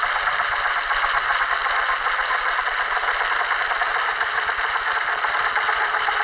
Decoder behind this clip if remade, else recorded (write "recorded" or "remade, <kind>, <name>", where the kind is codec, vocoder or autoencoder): recorded